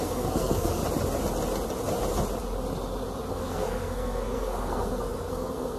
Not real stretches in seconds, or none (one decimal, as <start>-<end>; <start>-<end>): 0.0-0.8; 3.3-5.8